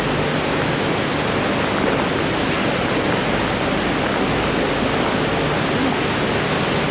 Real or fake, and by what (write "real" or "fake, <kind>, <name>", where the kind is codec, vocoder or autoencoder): real